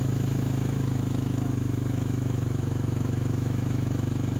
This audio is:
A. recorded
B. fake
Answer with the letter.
B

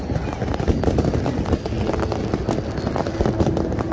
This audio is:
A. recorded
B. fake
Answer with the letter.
A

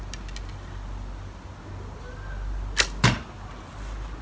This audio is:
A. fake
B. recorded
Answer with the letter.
B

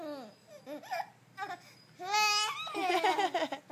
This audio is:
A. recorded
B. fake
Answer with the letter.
A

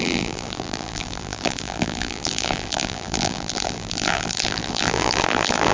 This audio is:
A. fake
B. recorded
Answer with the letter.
A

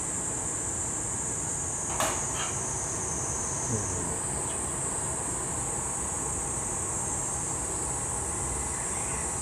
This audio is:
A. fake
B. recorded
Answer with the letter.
B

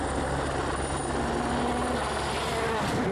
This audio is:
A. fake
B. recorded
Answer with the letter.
B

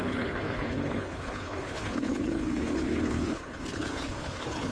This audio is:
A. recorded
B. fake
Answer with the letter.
B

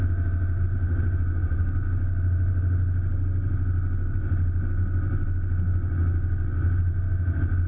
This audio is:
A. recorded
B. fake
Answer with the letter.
A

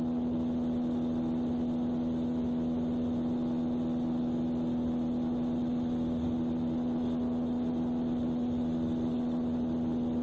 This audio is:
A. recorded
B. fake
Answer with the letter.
A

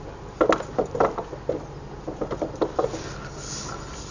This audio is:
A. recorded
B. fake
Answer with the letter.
A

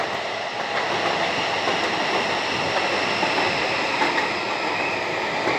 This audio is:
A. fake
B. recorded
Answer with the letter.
B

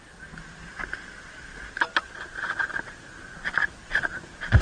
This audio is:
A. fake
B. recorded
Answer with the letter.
B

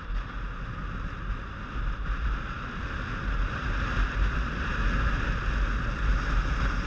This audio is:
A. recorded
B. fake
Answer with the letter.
A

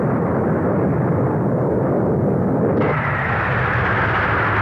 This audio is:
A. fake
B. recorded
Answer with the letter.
B